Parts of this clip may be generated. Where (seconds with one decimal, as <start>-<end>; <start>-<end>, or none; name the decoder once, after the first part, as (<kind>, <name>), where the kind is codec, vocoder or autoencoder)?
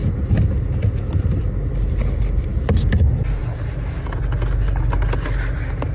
none